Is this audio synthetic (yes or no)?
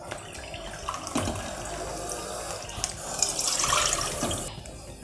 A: no